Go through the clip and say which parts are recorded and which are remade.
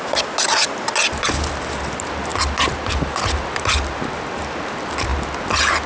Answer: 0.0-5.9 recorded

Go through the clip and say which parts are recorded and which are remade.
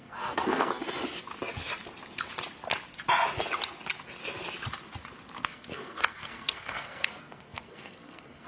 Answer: 0.0-0.8 remade; 0.8-5.4 recorded; 5.4-8.5 remade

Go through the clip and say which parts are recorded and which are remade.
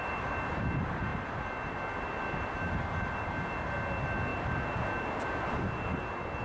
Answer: 0.0-6.4 recorded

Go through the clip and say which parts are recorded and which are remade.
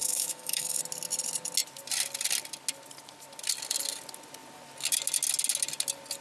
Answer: 0.0-0.8 remade; 0.8-6.2 recorded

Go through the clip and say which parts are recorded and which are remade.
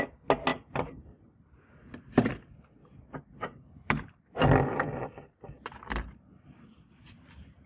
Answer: 0.0-0.5 recorded; 0.5-2.3 remade; 2.3-3.0 recorded; 3.0-7.7 remade